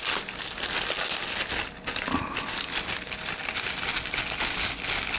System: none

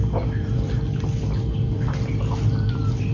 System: none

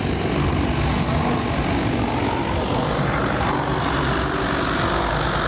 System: none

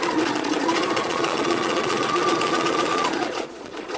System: vocoder, Vocos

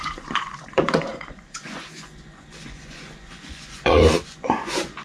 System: vocoder, Vocos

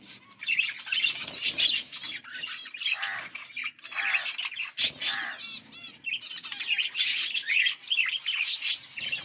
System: none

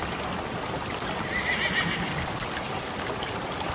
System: none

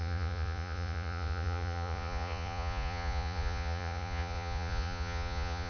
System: vocoder, Vocos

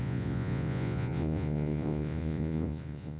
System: vocoder, Vocos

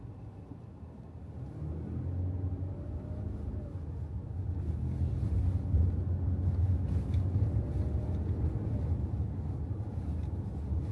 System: none